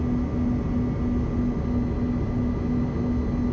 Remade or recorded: recorded